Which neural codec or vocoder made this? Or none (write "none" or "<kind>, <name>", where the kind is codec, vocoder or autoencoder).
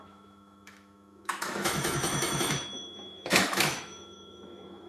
autoencoder, DAC-VAE